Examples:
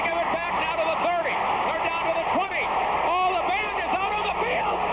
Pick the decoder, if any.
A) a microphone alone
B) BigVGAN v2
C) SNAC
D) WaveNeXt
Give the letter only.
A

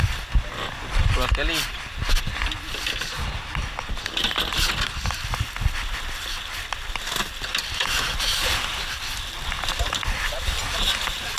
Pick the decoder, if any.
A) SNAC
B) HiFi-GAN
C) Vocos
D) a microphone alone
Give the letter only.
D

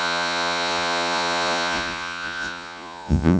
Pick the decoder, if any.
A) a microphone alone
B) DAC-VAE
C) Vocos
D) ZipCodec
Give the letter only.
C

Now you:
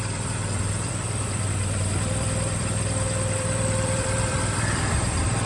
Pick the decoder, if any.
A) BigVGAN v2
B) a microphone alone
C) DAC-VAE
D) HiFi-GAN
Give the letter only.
A